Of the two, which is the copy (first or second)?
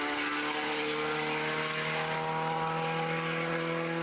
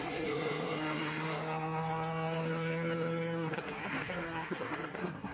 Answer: second